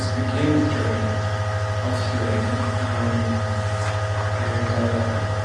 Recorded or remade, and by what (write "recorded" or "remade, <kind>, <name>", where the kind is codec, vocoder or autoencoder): recorded